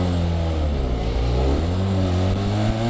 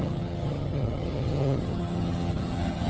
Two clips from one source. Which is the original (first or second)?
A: first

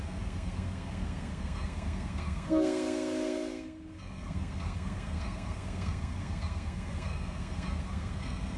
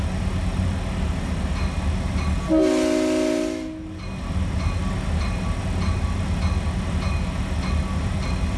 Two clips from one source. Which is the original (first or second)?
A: second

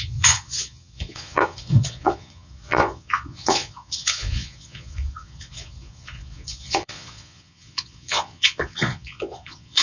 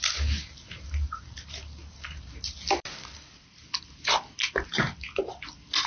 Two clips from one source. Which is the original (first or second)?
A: second